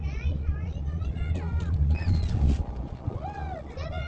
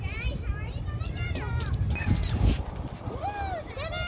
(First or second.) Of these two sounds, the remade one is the first